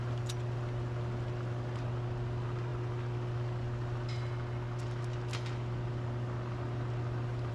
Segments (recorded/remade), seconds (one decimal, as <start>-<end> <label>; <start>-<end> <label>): 0.0-7.5 recorded